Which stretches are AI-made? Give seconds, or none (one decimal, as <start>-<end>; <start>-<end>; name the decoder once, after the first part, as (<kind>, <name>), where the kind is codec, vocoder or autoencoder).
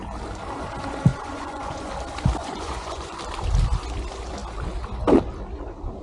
1.1-1.9 (vocoder, Vocos); 2.4-3.2